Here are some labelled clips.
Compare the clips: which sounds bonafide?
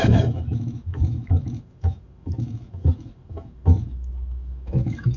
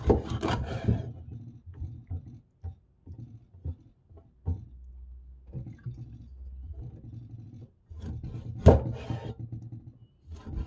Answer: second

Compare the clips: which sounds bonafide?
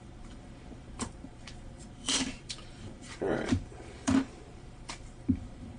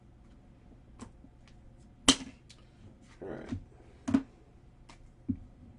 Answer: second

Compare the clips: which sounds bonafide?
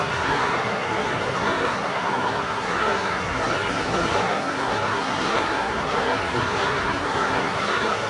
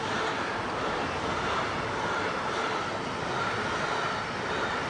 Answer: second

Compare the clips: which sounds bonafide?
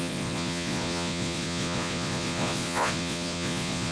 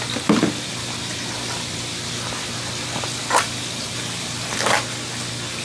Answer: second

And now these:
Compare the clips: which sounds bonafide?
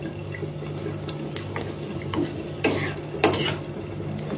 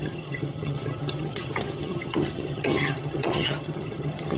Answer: first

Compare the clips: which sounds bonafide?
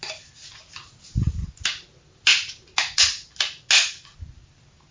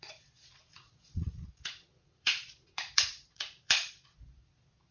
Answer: first